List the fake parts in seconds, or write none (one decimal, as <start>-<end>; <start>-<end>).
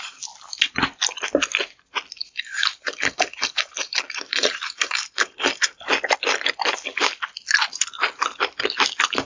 2.2-5.9